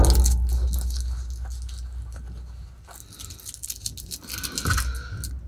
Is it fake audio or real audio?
real